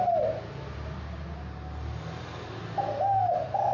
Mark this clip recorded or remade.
recorded